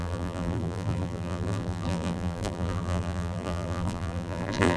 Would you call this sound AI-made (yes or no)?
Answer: yes